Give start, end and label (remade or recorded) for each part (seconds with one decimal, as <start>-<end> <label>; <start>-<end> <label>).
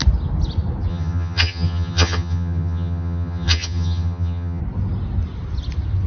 0.0-0.9 recorded; 0.9-4.6 remade; 4.6-6.1 recorded